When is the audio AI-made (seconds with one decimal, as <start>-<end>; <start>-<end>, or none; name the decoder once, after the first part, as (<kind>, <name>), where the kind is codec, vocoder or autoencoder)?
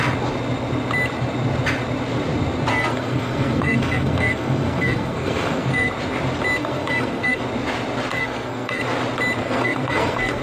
2.7-5.9 (codec, SNAC); 6.6-7.4; 8.1-8.8; 9.4-10.4